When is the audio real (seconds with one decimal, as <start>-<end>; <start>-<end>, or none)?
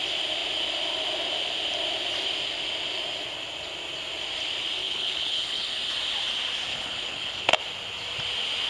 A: 0.0-4.8; 5.8-6.7; 7.5-8.7